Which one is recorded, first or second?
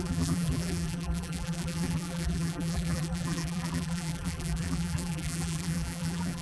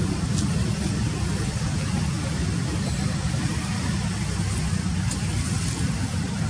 second